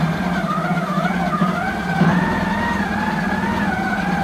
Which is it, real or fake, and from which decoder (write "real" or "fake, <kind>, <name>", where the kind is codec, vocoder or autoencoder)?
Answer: real